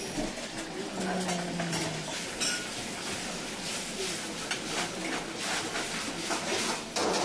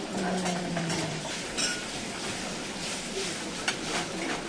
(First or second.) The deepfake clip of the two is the second